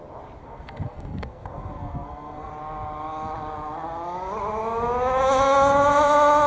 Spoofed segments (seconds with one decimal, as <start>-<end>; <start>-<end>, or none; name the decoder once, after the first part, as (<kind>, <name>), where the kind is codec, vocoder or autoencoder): 0.4-2.5 (codec, SNAC)